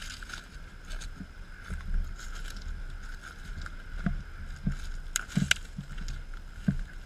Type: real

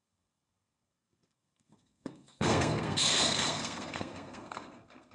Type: fake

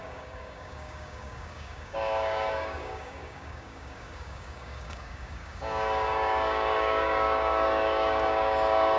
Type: fake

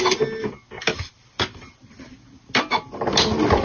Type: real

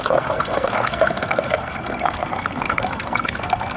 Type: fake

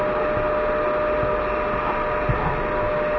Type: real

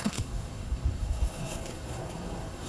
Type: fake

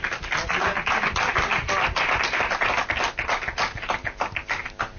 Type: real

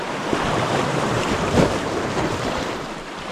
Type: fake